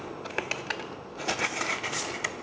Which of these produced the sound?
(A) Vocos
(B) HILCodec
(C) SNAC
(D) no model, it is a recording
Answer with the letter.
D